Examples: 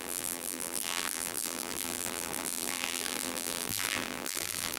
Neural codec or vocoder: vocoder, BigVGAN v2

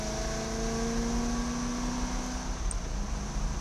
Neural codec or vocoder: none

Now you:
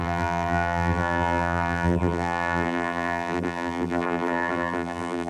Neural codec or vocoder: vocoder, BigVGAN v2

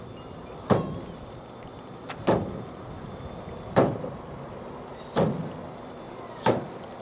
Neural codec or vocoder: none